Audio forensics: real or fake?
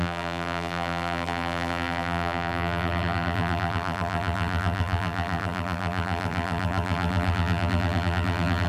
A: fake